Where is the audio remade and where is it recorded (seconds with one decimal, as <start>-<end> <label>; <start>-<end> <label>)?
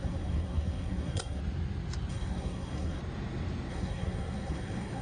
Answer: 0.0-1.4 remade; 1.4-2.1 recorded; 2.1-3.0 remade; 3.0-3.7 recorded; 3.7-5.0 remade